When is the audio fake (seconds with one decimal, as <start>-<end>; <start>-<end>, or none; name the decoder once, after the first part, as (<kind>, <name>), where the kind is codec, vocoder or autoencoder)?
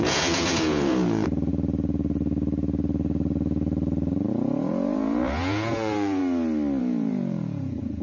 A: 0.0-1.5 (vocoder, Vocos); 4.3-6.2; 6.8-8.0